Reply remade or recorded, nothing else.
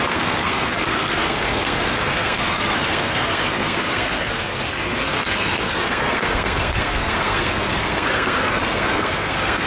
remade